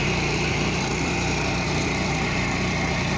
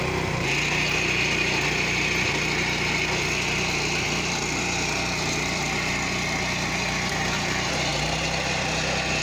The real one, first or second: second